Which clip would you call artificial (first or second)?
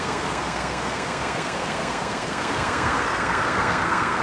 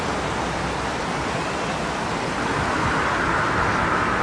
first